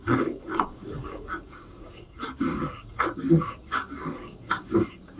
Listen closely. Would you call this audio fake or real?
fake